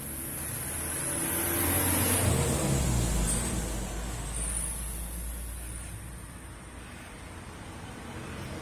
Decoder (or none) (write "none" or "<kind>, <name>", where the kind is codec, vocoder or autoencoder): none